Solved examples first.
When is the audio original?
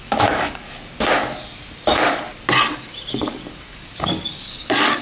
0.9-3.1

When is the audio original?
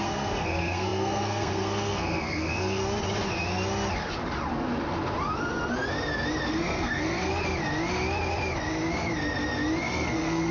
2.8-6.5; 7.3-9.8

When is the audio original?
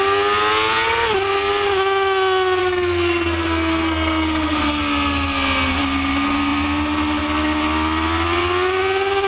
0.0-2.6; 4.8-9.3